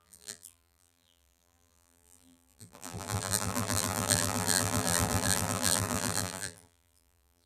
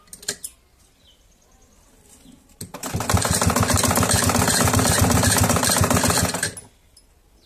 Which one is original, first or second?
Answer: second